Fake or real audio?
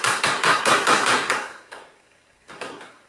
fake